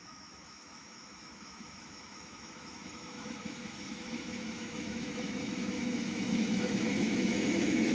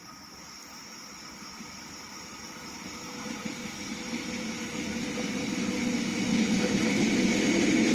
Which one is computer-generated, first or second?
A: first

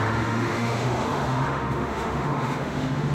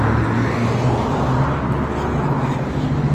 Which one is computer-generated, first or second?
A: first